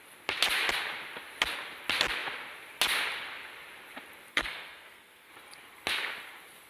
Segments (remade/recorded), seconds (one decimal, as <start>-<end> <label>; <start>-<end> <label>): 0.0-4.3 recorded; 4.3-5.3 remade; 5.3-6.7 recorded